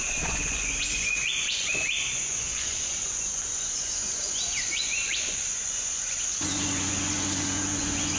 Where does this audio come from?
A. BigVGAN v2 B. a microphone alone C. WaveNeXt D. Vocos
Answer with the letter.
D